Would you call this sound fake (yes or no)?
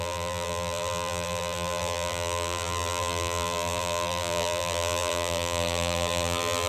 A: yes